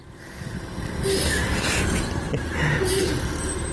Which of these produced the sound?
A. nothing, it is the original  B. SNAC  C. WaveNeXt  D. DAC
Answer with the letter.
A